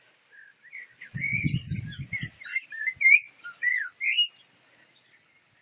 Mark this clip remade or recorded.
recorded